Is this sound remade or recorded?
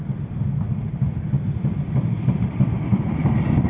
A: remade